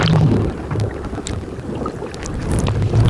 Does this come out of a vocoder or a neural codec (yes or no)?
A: no